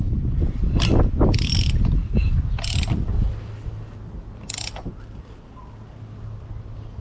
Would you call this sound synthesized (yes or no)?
no